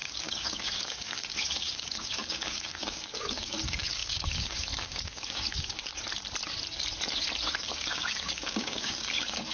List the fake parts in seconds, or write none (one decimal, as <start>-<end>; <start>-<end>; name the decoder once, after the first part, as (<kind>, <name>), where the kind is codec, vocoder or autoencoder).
0.0-5.9 (codec, DAC); 7.6-9.5